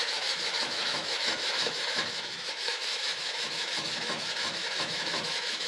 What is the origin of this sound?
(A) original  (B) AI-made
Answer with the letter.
B